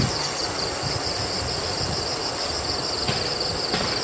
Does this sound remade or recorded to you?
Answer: remade